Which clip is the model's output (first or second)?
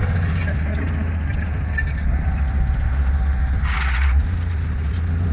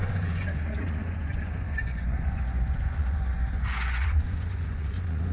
second